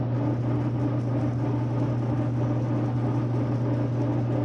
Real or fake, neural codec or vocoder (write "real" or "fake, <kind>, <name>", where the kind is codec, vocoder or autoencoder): real